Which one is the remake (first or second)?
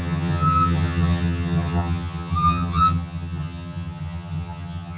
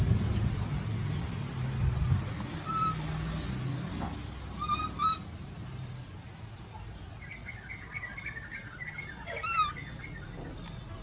first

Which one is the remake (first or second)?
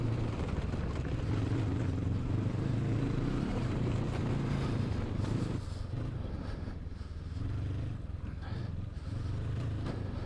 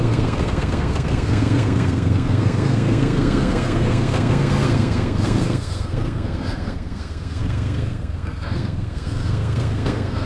second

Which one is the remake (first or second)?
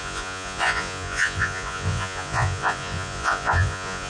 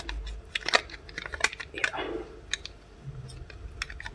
first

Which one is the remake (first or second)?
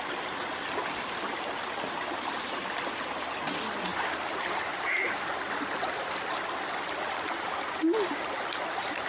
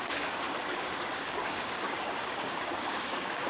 second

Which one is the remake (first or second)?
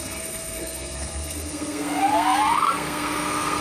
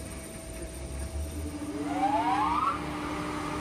first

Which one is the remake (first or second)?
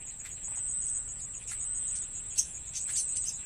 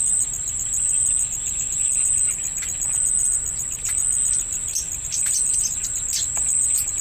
first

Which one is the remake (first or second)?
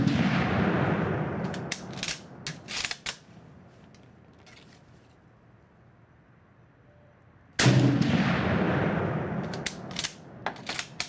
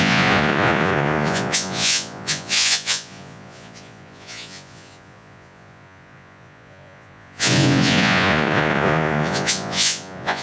second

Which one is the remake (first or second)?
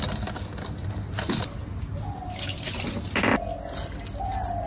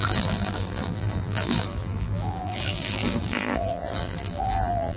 second